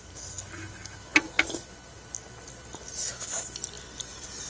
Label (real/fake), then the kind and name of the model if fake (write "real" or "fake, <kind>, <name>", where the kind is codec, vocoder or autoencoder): real